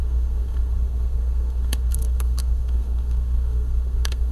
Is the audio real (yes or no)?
no